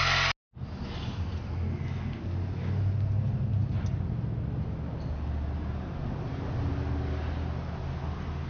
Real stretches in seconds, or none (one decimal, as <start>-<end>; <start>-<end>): 0.0-8.5